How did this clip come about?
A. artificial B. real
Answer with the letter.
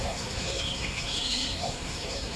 A